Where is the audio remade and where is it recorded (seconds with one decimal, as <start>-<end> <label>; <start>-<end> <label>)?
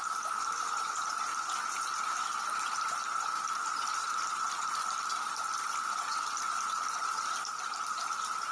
0.0-8.5 recorded